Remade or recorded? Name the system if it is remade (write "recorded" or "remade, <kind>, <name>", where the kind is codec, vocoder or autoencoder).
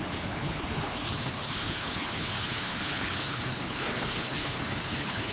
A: remade, codec, HILCodec